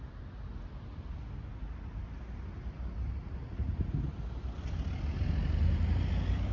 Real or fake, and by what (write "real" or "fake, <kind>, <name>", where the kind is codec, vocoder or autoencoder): real